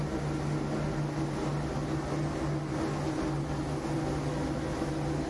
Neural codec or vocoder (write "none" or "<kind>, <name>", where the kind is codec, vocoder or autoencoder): none